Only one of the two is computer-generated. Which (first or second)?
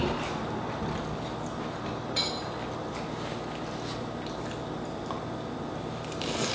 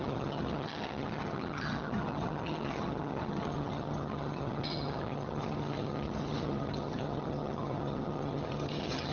second